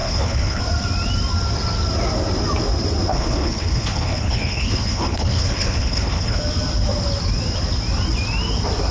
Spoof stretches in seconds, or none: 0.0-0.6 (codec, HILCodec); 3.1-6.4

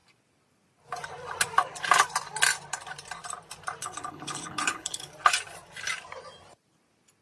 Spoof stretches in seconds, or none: 3.8-5.1 (codec, HILCodec)

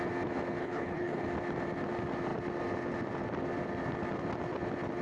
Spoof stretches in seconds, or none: 0.6-1.2 (codec, HILCodec)

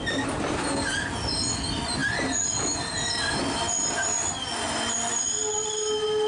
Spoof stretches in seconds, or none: none

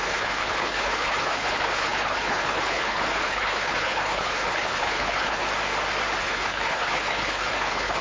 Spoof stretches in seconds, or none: 0.0-5.4 (codec, HILCodec); 6.2-8.0